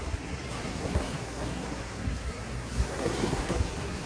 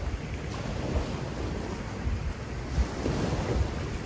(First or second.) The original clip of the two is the second